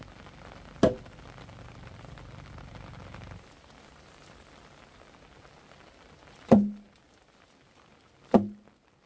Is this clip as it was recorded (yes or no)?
yes